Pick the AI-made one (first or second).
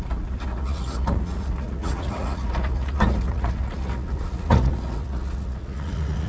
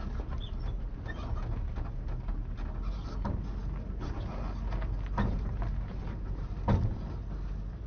first